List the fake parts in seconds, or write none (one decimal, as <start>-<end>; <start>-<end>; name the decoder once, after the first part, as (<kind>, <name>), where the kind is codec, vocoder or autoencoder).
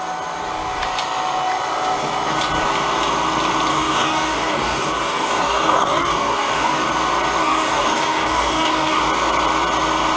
3.7-6.9 (codec, DAC); 7.4-9.0